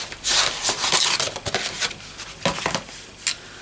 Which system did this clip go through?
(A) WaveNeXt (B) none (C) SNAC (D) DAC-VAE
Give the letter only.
B